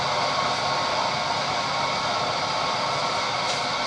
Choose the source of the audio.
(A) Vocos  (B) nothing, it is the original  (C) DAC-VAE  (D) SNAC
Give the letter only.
B